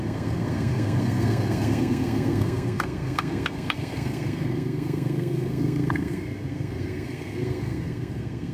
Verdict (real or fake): fake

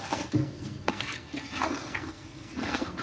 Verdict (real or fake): fake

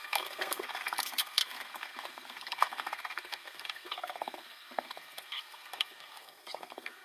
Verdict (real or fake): fake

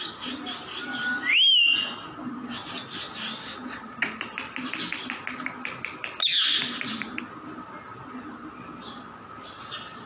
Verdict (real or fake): real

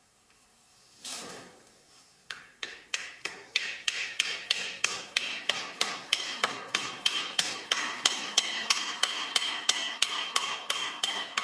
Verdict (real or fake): fake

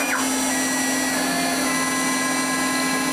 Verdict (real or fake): real